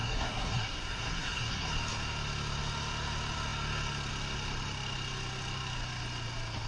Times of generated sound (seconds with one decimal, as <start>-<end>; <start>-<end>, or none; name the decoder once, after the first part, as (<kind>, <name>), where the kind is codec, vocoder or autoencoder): 0.0-1.7 (codec, SNAC)